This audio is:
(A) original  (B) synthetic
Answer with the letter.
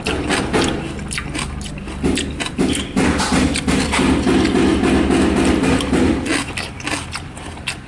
A